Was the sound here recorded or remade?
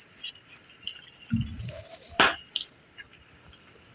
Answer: recorded